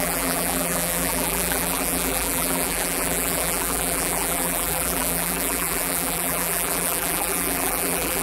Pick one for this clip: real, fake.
fake